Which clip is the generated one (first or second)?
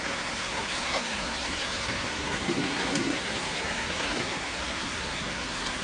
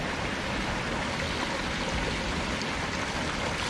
first